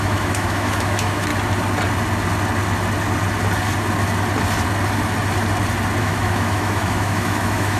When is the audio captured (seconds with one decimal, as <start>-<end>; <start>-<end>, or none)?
1.3-6.0